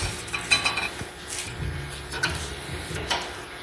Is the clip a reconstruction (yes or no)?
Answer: no